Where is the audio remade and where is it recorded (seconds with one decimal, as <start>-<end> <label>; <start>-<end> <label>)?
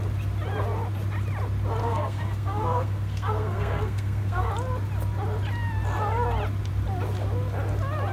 0.0-1.8 recorded; 1.8-4.5 remade; 4.5-8.1 recorded